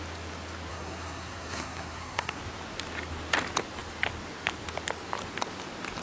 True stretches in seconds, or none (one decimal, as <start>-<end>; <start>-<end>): 0.0-0.7; 2.4-6.0

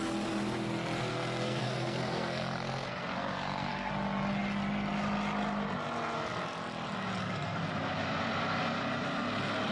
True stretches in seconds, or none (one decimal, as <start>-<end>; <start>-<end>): 0.0-1.1; 3.9-7.2; 7.7-9.7

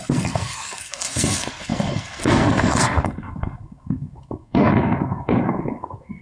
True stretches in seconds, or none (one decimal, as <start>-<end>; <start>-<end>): none